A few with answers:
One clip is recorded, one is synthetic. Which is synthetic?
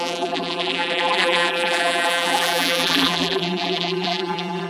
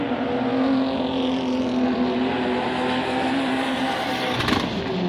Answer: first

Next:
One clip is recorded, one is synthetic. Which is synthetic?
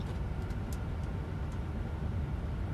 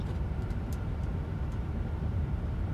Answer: second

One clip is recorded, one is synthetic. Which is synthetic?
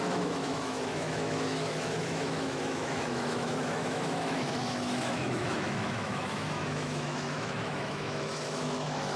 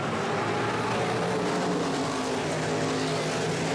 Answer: first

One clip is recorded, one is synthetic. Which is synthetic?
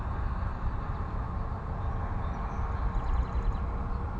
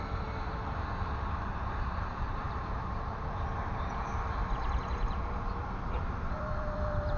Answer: second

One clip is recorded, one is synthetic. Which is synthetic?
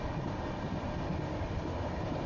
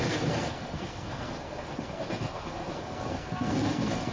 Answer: second